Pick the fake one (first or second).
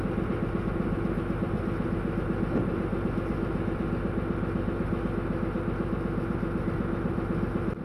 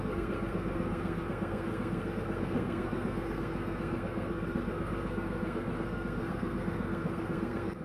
second